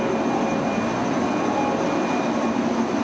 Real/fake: real